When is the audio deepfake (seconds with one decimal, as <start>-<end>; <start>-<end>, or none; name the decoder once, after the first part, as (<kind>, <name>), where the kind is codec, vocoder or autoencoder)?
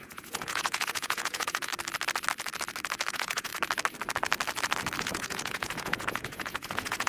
0.0-1.7 (vocoder, Vocos); 3.1-3.5; 5.0-7.1